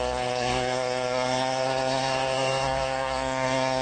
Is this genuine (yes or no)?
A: no